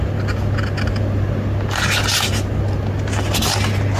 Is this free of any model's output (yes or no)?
yes